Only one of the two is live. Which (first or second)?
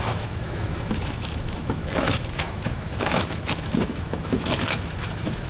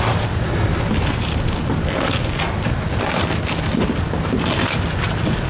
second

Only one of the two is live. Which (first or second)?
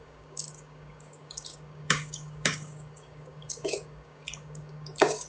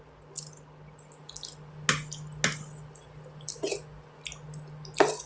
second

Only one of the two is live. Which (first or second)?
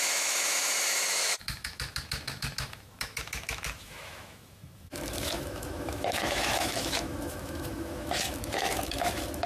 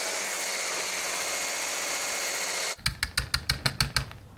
second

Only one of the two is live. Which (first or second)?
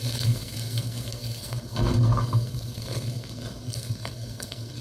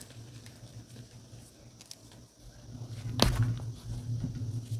second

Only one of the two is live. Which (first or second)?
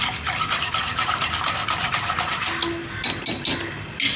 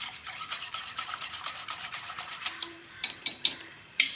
first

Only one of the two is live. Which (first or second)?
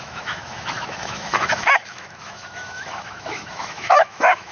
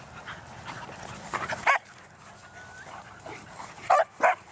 second